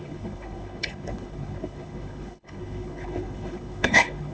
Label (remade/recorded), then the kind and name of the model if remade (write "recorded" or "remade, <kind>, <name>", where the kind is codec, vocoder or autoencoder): remade, codec, HILCodec